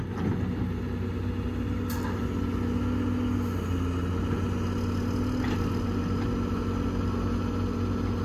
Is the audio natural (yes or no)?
yes